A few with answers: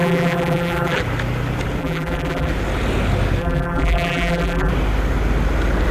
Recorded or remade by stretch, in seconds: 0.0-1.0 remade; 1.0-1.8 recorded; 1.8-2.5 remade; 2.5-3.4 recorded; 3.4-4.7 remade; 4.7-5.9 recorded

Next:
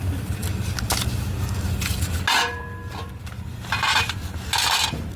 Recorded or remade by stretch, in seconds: 0.0-5.2 recorded